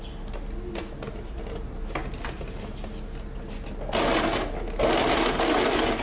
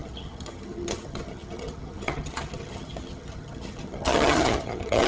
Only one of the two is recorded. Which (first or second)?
first